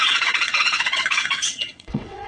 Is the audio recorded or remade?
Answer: remade